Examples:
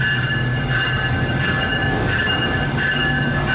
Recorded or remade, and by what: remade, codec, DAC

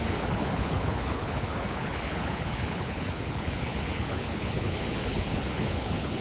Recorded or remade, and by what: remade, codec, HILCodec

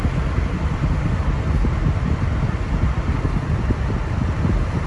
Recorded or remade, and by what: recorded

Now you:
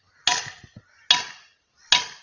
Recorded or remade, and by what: recorded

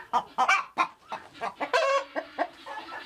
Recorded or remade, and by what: recorded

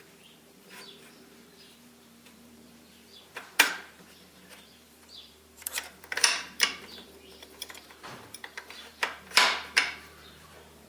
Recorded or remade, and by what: remade, vocoder, BigVGAN v2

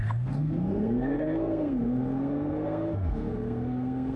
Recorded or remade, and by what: remade, codec, SNAC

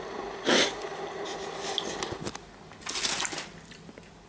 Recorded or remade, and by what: recorded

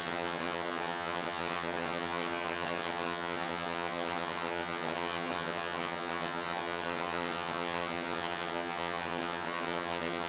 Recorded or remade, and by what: remade, vocoder, HiFi-GAN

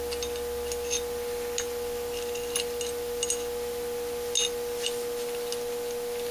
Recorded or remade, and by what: recorded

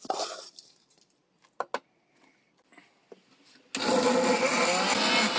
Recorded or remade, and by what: recorded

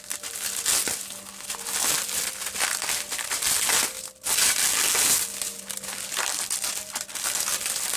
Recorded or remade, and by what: recorded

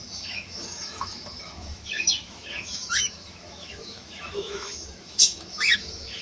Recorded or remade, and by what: remade, autoencoder, DAC-VAE